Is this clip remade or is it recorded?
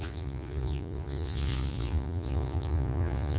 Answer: remade